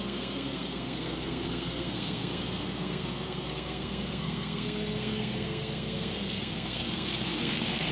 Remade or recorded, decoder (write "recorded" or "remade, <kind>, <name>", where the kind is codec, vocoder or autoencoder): remade, codec, SNAC